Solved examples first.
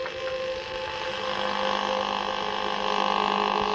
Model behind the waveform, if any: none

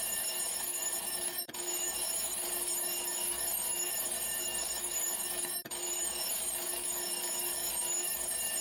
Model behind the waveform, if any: codec, DAC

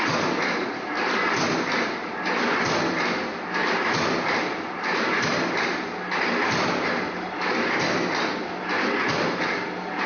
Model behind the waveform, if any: none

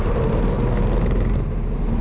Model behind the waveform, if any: none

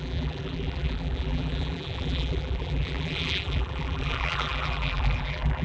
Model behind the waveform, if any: vocoder, BigVGAN v2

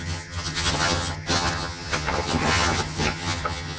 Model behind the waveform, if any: vocoder, HiFi-GAN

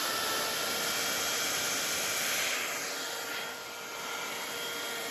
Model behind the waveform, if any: vocoder, BigVGAN v2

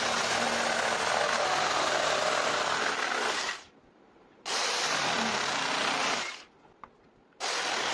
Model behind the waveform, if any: none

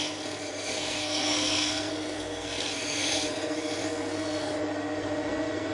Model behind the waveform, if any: codec, SNAC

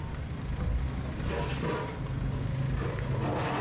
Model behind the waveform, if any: none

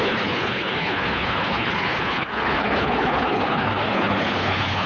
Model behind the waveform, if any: codec, HILCodec